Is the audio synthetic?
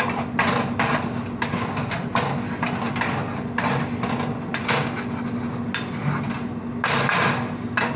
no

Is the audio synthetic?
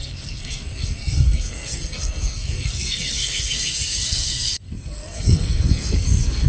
yes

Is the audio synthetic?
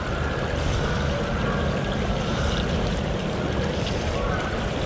no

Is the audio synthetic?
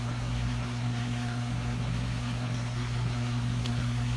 yes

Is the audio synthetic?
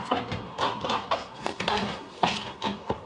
yes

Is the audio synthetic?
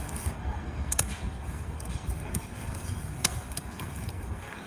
yes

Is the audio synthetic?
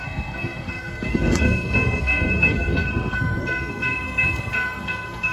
yes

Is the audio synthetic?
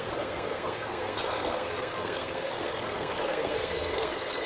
yes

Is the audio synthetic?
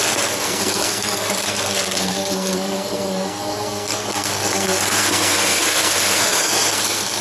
yes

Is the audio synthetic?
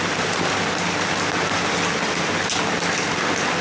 no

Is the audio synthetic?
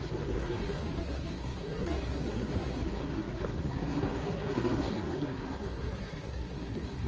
yes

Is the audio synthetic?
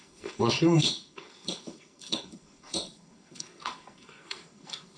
yes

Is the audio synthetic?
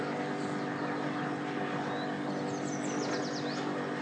no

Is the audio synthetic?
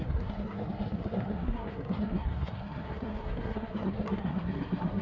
yes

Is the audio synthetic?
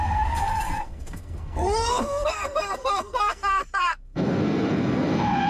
yes